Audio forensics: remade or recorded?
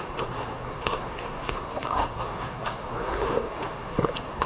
remade